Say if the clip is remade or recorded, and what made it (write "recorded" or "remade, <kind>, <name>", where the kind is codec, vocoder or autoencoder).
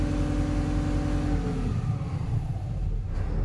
recorded